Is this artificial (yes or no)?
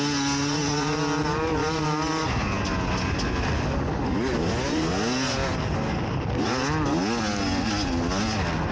no